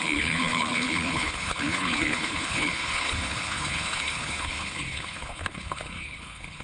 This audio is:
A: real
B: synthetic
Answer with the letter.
B